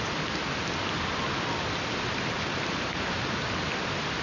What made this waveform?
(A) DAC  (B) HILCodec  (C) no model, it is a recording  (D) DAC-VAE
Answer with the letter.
C